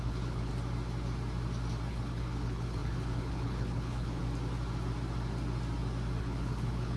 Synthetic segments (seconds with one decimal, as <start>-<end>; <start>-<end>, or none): 0.0-0.5; 1.9-4.2; 6.2-7.0